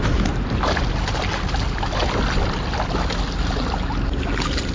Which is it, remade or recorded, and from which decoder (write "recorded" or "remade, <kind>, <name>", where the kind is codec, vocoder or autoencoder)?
recorded